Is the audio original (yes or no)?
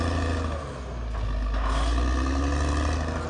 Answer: yes